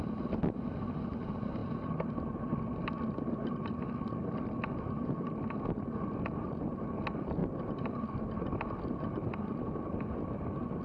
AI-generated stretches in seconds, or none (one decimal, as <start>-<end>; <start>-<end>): none